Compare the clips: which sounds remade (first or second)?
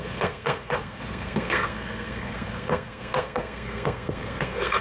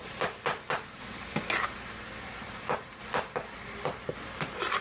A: first